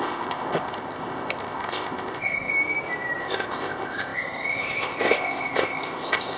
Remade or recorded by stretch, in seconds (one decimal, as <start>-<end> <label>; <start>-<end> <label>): 0.0-2.5 remade; 2.5-3.2 recorded; 3.2-6.4 remade